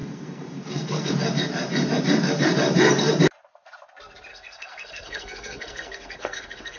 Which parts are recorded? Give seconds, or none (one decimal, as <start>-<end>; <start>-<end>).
1.1-4.3